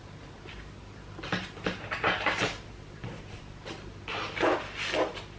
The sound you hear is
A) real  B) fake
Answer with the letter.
A